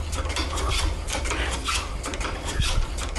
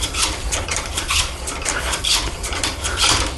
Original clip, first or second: first